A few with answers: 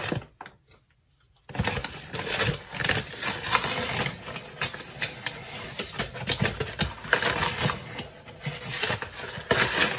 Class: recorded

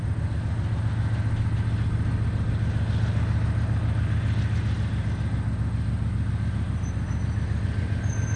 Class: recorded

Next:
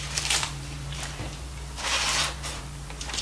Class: remade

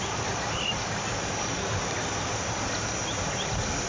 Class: recorded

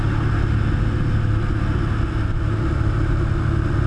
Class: recorded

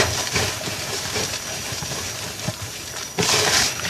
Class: remade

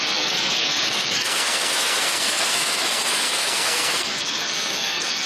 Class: remade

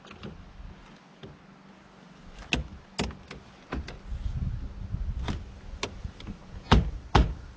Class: recorded